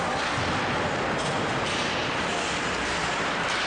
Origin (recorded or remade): recorded